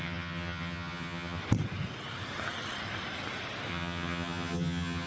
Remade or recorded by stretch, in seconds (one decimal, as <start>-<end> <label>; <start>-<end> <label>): 0.0-1.4 remade; 1.4-3.7 recorded; 3.7-5.1 remade